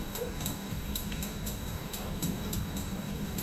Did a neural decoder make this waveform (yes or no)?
yes